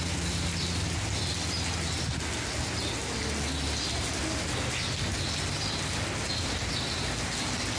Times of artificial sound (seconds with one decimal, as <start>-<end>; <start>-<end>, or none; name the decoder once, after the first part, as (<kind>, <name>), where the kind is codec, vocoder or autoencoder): none